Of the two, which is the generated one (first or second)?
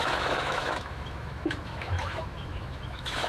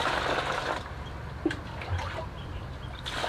first